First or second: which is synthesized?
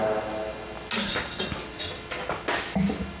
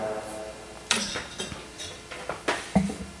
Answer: second